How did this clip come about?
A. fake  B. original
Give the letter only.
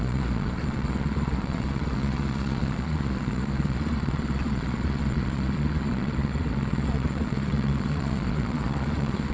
A